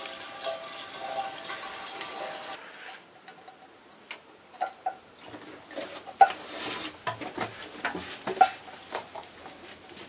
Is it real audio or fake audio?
real